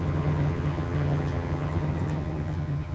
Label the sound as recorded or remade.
remade